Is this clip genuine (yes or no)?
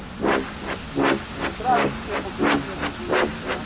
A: yes